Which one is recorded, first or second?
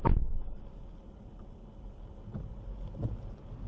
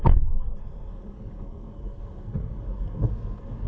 first